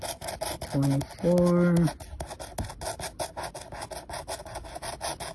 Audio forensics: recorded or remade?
recorded